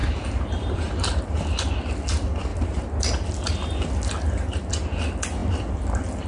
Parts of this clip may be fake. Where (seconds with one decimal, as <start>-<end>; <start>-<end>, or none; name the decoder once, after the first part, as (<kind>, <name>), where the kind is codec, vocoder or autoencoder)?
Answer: 0.0-1.6 (vocoder, BigVGAN v2); 2.5-3.3; 5.4-6.3